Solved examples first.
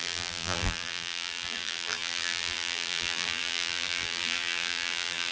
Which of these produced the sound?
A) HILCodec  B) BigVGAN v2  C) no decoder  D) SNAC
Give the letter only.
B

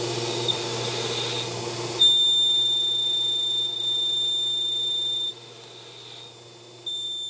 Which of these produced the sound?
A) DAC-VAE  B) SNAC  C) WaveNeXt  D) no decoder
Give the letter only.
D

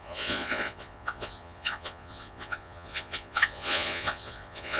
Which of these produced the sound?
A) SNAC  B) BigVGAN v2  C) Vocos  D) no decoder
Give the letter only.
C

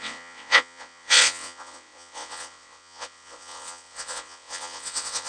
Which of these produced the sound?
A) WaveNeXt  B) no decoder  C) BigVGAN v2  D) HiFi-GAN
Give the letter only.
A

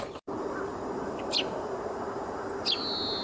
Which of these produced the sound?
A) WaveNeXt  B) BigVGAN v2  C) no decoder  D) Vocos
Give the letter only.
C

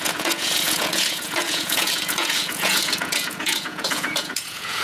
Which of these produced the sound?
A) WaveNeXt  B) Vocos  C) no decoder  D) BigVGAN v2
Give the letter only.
B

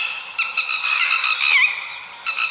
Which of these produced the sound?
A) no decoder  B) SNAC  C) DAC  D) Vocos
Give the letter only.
A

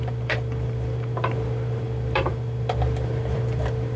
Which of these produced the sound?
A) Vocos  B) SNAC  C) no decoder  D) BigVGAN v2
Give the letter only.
D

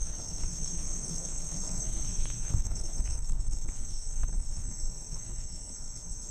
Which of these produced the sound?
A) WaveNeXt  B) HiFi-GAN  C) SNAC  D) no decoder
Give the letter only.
C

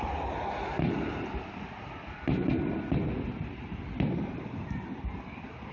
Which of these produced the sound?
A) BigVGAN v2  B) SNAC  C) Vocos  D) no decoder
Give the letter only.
D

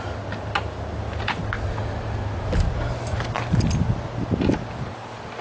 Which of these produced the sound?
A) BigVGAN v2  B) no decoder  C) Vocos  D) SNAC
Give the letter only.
B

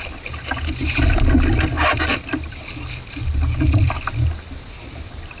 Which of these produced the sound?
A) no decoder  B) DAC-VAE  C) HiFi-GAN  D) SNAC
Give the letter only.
A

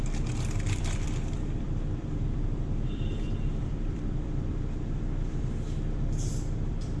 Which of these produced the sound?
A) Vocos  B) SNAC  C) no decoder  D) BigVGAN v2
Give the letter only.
D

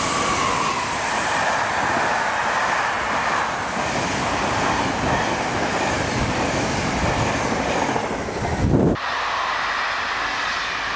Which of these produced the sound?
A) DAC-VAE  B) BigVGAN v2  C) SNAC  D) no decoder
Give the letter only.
D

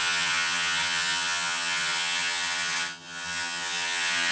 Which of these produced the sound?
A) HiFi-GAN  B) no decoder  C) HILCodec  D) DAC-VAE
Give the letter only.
A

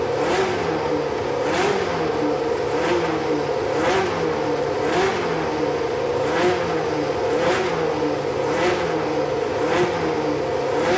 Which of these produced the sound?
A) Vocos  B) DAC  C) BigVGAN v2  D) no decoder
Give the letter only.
D